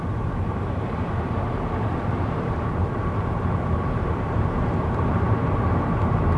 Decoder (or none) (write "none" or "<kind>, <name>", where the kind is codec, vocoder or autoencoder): vocoder, BigVGAN v2